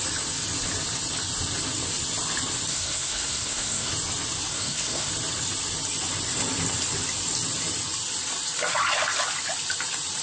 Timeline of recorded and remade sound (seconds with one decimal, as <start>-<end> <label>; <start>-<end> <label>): 0.0-2.7 recorded; 2.7-3.9 remade; 3.9-4.5 recorded; 4.5-5.1 remade; 5.1-10.2 recorded